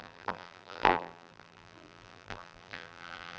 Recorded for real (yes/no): no